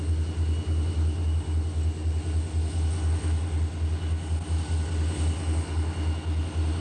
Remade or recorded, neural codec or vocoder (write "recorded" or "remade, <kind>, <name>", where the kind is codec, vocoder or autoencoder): recorded